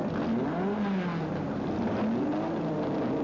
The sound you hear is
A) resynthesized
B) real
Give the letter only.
B